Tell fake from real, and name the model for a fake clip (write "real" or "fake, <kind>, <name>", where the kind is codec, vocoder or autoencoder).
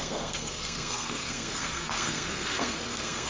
fake, codec, SNAC